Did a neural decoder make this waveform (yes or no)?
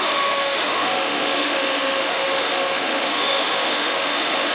yes